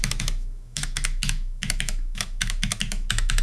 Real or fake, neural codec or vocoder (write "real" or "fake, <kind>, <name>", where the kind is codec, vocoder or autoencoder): fake, autoencoder, DAC-VAE